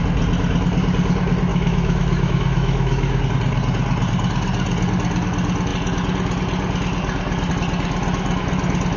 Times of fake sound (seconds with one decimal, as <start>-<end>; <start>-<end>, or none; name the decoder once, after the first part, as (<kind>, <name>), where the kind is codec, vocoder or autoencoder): 1.5-3.2 (autoencoder, DAC-VAE)